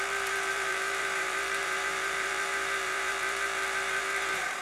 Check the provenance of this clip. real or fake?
fake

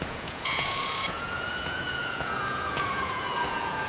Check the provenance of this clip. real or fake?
fake